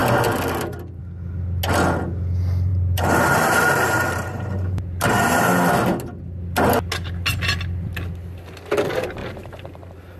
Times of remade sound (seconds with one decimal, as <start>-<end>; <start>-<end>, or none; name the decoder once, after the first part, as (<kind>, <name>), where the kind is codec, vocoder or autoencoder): 2.7-5.2 (vocoder, BigVGAN v2); 9.2-10.2